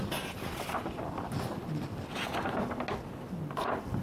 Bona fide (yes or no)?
yes